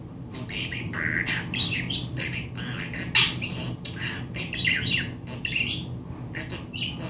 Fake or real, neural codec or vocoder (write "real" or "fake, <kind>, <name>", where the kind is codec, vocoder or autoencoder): real